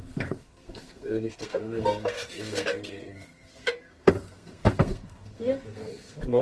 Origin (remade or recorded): remade